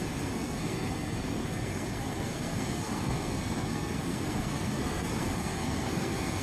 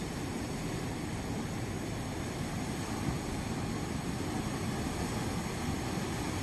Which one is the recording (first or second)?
second